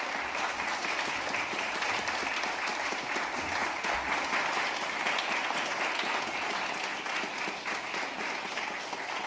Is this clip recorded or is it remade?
recorded